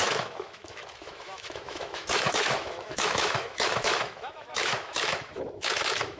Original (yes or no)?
no